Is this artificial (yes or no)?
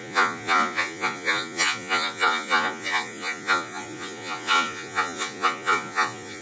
yes